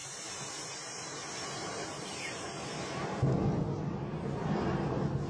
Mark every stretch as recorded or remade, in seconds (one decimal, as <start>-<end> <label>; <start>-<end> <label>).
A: 0.0-5.3 recorded